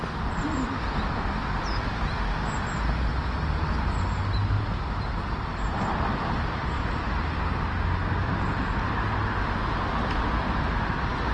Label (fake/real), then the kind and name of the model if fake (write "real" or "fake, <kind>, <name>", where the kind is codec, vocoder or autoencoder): real